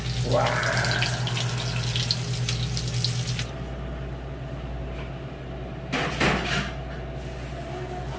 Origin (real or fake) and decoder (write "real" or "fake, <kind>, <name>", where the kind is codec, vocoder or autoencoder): real